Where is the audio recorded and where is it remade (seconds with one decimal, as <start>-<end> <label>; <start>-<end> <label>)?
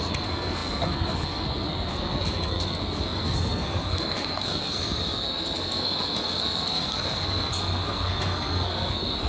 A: 0.0-9.3 remade